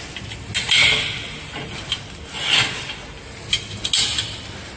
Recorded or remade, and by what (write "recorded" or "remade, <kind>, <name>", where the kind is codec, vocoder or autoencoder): recorded